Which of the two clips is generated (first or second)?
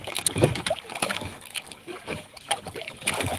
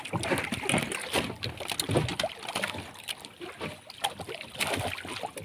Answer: first